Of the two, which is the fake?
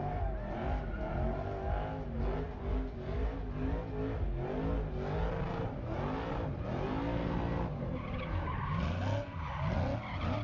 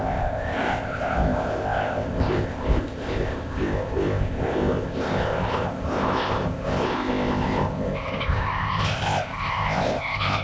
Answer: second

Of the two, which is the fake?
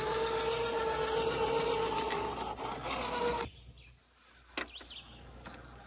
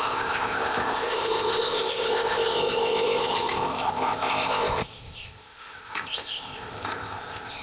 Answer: second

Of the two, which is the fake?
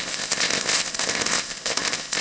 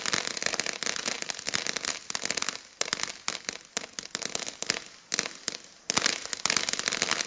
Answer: first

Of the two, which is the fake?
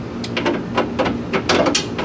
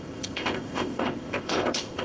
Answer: second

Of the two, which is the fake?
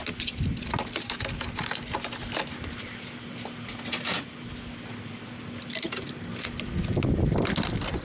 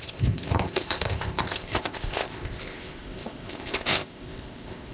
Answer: second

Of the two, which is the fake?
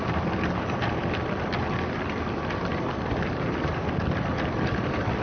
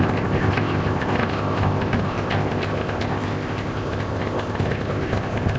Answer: second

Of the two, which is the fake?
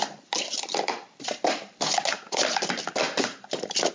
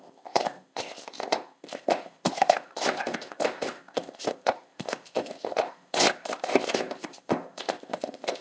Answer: second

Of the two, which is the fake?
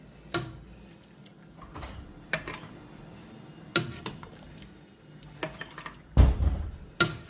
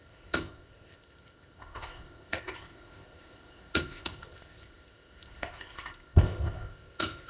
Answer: second